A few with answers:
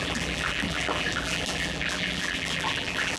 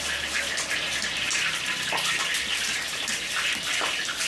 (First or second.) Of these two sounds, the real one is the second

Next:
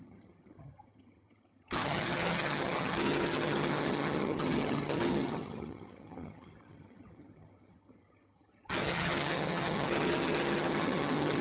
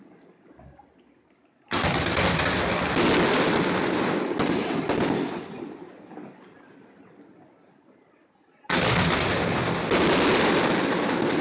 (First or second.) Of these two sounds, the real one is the second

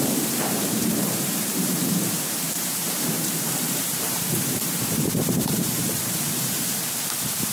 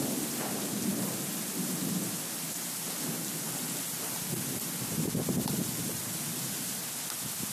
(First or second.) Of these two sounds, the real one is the second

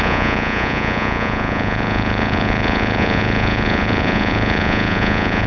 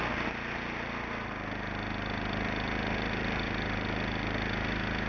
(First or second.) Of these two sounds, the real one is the second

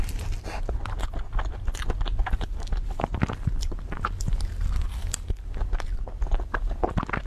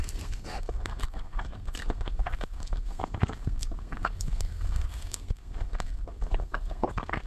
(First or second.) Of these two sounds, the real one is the first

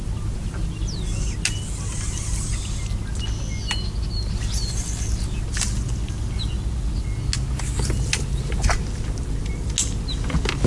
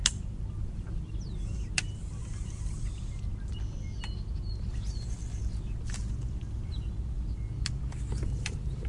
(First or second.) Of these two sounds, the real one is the first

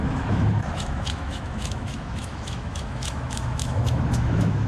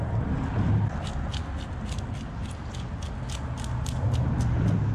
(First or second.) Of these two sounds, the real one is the second